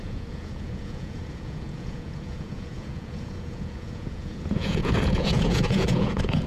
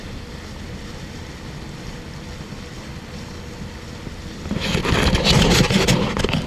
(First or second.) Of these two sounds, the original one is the second